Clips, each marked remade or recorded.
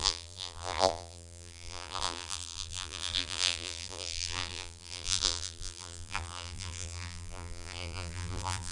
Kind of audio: remade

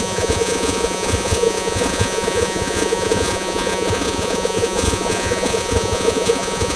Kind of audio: remade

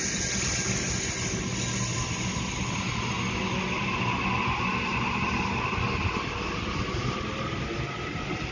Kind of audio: recorded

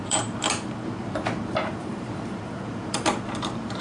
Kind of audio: remade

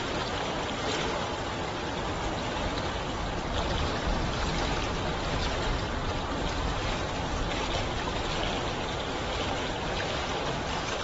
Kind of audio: recorded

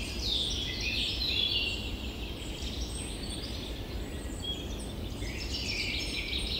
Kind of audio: recorded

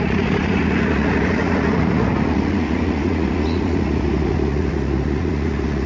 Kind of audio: remade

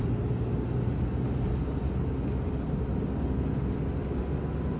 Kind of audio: recorded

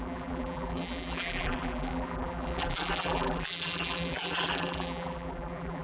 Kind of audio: remade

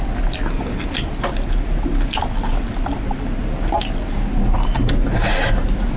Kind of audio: recorded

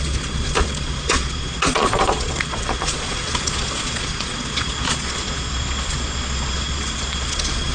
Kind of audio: remade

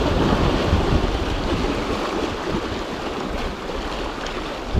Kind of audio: recorded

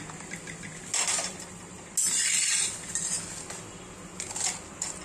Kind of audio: recorded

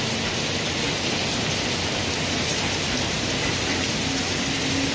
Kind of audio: recorded